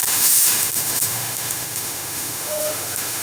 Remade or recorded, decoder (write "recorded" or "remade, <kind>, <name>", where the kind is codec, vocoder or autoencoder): remade, autoencoder, DAC-VAE